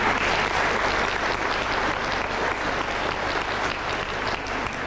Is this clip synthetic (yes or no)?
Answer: no